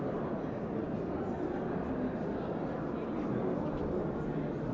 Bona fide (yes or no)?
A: yes